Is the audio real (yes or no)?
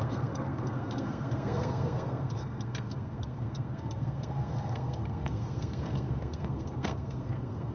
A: no